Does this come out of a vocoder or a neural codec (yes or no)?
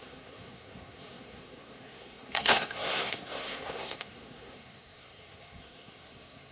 yes